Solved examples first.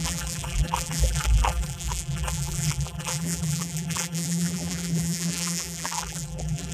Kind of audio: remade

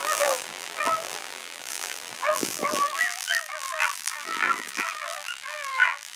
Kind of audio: remade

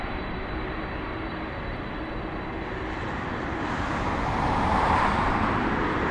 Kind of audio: recorded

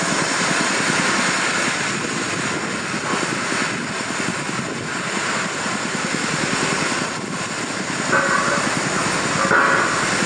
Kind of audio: recorded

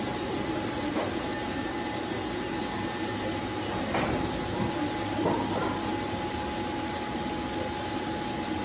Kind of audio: recorded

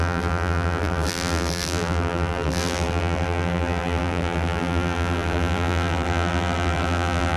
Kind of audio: remade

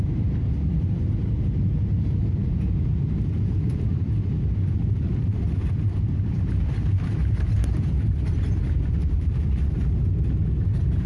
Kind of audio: remade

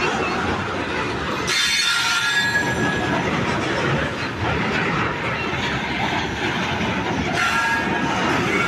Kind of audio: recorded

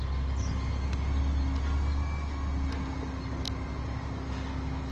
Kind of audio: recorded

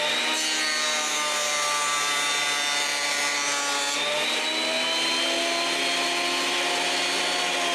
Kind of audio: recorded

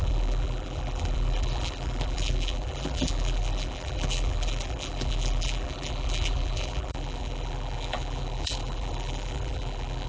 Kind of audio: remade